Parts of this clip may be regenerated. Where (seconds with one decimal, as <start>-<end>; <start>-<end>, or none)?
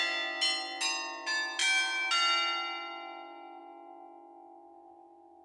none